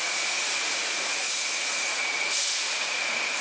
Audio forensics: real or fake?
fake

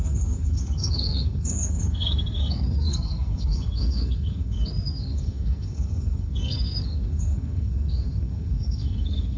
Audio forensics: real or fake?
fake